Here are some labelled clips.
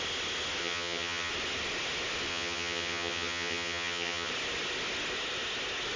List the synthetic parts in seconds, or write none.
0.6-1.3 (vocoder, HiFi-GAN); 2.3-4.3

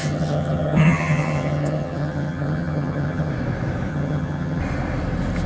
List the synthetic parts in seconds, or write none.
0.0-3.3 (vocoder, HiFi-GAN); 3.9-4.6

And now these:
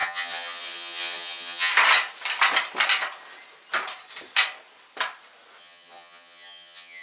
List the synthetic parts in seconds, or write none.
0.0-1.7 (vocoder, HiFi-GAN); 5.6-7.0

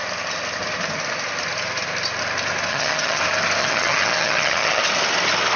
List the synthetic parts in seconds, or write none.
2.7-3.2 (vocoder, HiFi-GAN); 3.6-4.8

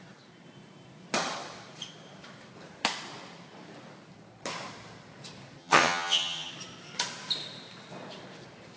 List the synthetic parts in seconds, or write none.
5.6-6.5 (vocoder, HiFi-GAN)

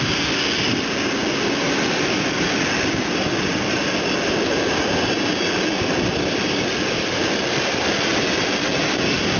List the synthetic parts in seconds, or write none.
none